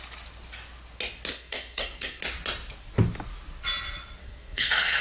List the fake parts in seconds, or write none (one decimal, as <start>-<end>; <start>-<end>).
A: 1.3-2.2; 4.2-5.0